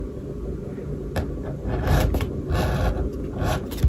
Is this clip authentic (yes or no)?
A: yes